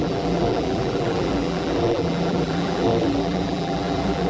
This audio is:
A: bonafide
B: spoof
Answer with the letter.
B